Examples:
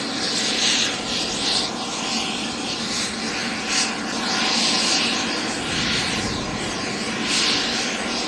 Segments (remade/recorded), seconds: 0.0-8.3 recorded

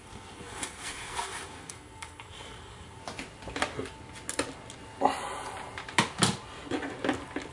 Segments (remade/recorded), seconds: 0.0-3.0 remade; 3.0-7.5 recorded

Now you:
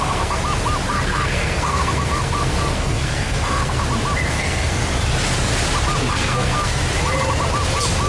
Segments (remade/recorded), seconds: 0.0-0.4 remade; 0.4-0.9 recorded; 0.9-3.8 remade; 3.8-4.3 recorded; 4.3-4.8 remade; 4.8-6.1 recorded; 6.1-6.8 remade; 6.8-8.1 recorded

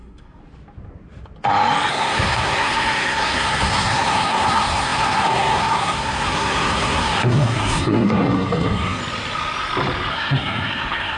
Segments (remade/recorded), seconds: 0.0-0.4 remade; 0.4-1.9 recorded; 1.9-9.0 remade; 9.0-10.1 recorded; 10.1-11.2 remade

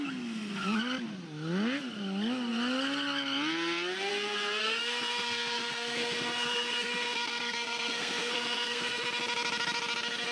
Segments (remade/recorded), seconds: 0.0-4.6 recorded; 4.6-9.0 remade; 9.0-10.3 recorded